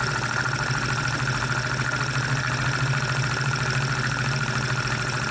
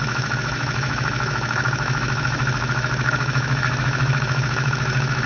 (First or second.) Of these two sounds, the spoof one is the second